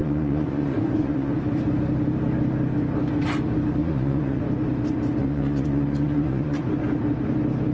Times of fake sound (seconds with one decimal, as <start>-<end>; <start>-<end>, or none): 0.0-1.3; 3.8-4.4; 5.2-6.6